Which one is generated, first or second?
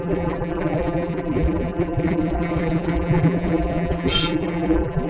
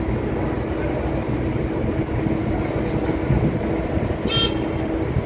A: first